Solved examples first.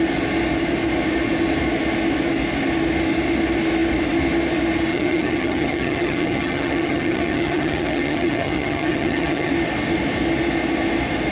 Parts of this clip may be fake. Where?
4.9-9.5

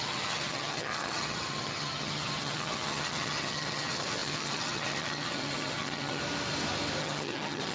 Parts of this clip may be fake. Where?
0.0-6.2; 7.0-7.7

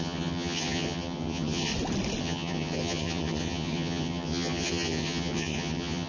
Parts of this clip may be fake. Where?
0.0-1.7; 2.2-6.1

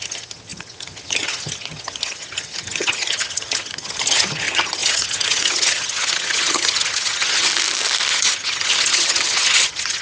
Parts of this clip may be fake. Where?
0.0-7.5; 8.1-10.0

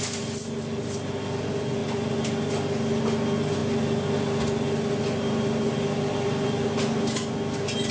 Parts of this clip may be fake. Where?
none